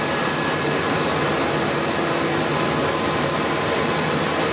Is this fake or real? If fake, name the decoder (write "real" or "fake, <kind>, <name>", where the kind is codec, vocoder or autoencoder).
real